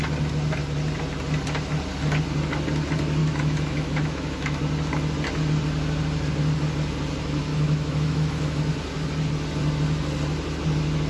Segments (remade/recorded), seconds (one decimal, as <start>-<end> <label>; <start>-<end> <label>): 0.0-3.2 recorded; 3.2-4.6 remade; 4.6-7.5 recorded; 7.5-8.7 remade; 8.7-11.1 recorded